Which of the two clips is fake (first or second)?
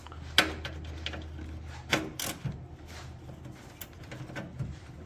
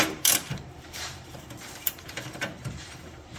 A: second